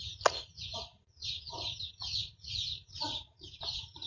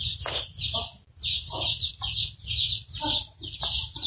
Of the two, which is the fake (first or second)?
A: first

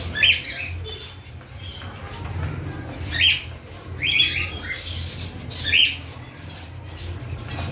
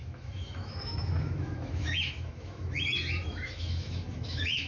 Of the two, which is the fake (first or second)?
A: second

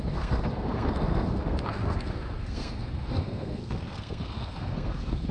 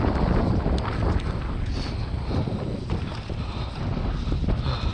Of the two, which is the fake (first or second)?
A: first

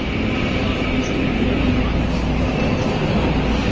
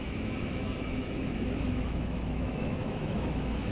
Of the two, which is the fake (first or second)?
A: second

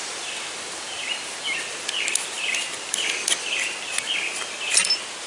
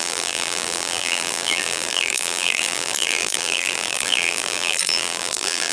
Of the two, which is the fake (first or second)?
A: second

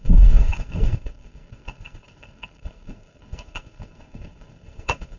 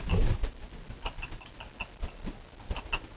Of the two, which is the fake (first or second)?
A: first